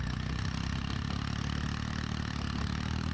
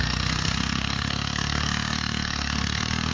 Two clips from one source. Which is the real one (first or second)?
first